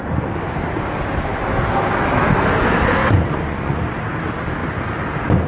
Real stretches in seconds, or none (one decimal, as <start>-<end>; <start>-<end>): 0.0-3.0; 3.8-5.5